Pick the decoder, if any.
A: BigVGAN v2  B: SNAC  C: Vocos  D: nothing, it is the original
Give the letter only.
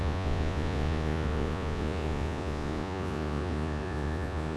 C